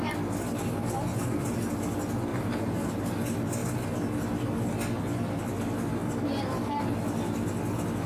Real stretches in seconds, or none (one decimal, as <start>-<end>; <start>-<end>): 0.0-1.1; 1.7-2.3; 3.0-8.1